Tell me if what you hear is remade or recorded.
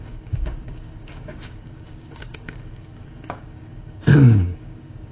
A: remade